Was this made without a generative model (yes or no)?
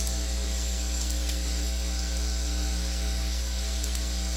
no